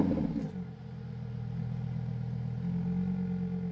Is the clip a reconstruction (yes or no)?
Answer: no